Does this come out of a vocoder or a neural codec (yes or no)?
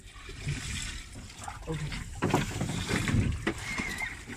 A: no